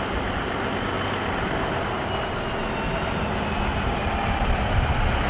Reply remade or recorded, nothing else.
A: recorded